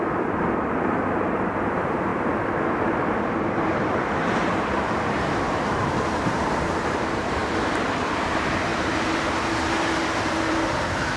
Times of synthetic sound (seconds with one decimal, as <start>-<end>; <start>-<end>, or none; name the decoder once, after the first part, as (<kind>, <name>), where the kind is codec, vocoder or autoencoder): 0.0-2.1 (vocoder, BigVGAN v2); 3.4-7.4; 8.2-11.2